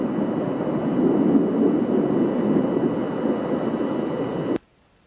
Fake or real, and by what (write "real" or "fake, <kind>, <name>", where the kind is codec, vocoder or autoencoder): real